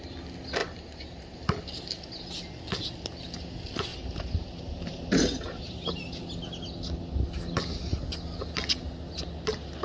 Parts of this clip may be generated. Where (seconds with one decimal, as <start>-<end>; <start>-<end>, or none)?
0.6-1.4; 3.9-6.0